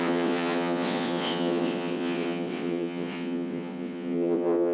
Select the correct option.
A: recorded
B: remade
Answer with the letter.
B